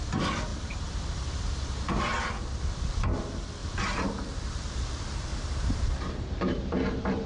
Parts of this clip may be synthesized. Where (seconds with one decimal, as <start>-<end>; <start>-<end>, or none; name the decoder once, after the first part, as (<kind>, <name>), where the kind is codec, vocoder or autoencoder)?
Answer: 0.5-2.0 (vocoder, BigVGAN v2); 3.6-4.1; 5.3-7.3